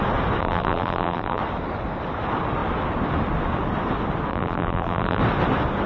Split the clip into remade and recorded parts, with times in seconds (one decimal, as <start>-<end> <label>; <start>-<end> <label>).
0.0-0.4 recorded; 0.4-1.4 remade; 1.4-4.3 recorded; 4.3-5.2 remade; 5.2-5.9 recorded